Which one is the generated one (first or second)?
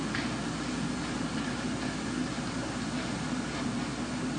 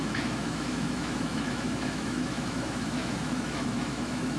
second